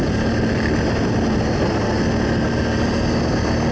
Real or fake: real